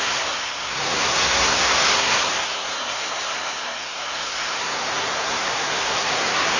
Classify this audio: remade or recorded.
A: remade